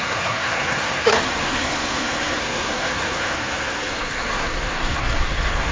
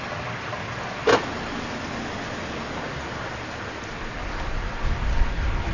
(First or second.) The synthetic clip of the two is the first